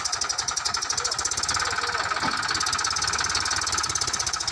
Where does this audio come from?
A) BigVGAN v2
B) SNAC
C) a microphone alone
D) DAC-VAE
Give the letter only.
C